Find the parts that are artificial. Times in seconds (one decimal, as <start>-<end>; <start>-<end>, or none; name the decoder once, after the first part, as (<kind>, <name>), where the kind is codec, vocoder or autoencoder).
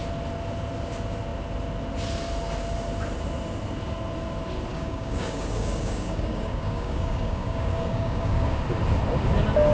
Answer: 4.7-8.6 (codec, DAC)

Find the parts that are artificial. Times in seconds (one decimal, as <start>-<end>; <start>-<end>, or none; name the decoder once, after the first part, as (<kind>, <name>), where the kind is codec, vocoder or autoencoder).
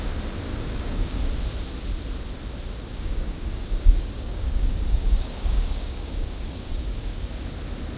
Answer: 0.5-1.2 (codec, DAC); 2.9-7.3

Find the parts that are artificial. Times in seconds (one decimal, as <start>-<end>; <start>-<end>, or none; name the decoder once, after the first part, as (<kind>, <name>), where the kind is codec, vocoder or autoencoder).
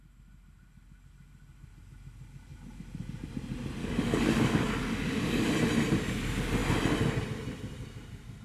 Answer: 3.8-5.5 (codec, DAC)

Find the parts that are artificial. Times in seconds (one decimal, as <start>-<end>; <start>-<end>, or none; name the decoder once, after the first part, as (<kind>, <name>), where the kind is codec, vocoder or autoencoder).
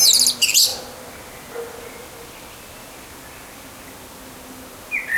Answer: none